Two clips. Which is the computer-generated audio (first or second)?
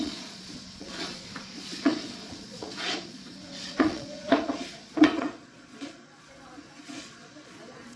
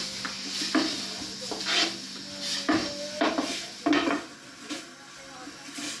first